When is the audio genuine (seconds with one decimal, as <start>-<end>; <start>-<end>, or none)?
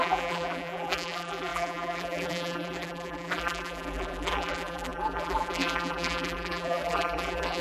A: none